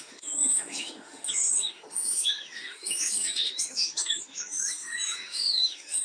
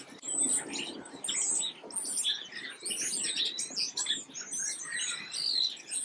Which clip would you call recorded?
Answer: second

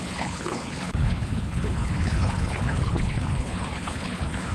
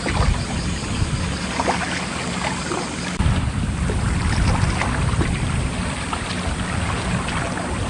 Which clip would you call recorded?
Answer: second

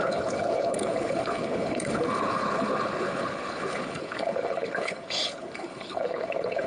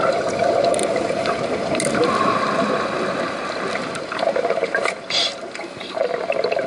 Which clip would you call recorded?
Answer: second